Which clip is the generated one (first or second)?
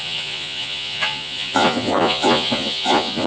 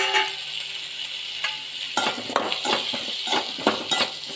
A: first